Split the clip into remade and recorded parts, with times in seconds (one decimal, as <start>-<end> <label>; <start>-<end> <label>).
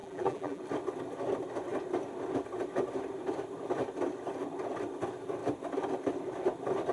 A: 0.0-0.6 remade; 0.6-6.9 recorded